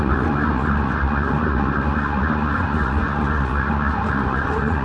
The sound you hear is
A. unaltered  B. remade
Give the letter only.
B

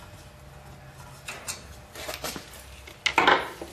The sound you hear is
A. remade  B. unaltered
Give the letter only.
B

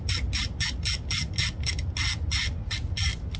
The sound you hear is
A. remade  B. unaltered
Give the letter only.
B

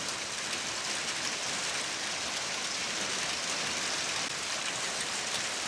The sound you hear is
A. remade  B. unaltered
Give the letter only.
B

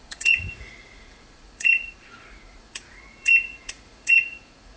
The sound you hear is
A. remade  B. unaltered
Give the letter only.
A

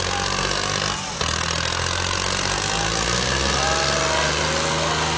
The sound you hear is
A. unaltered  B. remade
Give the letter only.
A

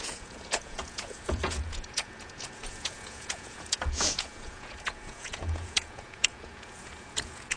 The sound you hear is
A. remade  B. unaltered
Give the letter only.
A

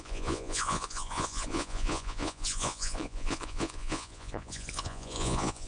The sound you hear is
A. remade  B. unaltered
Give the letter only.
A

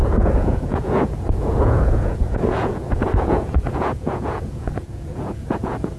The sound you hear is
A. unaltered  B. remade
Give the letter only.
B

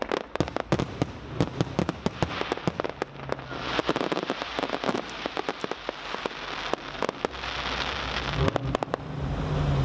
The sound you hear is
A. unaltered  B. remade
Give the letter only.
A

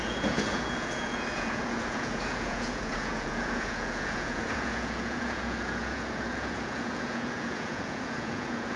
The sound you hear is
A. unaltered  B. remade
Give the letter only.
B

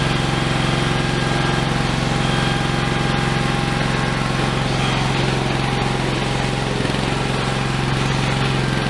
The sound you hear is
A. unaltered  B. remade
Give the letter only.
A